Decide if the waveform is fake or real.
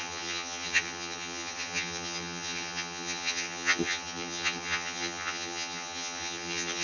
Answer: fake